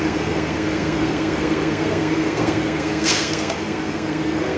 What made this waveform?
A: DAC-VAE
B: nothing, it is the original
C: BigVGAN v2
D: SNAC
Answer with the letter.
D